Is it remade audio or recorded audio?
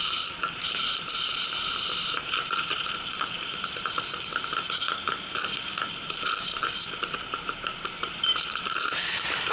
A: remade